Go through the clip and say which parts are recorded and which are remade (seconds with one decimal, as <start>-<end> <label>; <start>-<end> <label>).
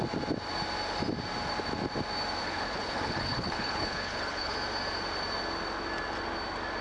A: 0.0-2.4 recorded; 2.4-4.5 remade; 4.5-6.8 recorded